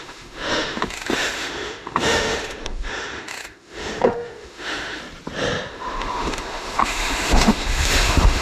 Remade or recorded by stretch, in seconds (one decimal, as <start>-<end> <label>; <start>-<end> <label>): 0.0-5.0 remade; 5.0-5.7 recorded; 5.7-8.4 remade